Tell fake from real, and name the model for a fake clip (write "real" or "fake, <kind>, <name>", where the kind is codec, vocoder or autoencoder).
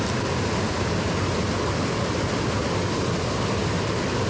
real